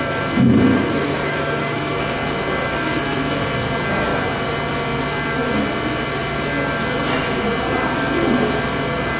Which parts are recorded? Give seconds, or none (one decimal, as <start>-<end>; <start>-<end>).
0.0-0.7; 2.0-9.2